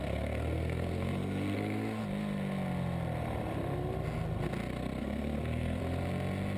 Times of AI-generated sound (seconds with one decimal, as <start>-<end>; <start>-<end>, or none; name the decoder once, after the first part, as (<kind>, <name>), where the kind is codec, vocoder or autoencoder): 0.0-2.0 (codec, SNAC); 5.0-5.8